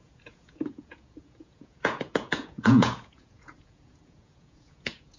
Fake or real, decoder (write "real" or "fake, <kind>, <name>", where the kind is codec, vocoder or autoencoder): fake, vocoder, Vocos